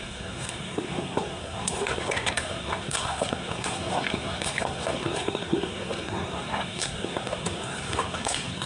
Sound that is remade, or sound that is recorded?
remade